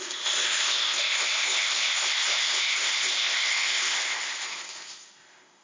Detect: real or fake fake